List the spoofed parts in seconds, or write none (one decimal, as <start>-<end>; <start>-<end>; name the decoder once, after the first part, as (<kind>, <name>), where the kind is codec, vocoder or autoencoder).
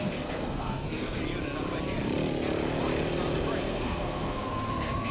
0.0-1.2 (codec, SNAC); 3.6-5.1